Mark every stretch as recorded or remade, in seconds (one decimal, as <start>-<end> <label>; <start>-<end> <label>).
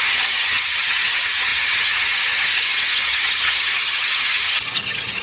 0.0-5.2 remade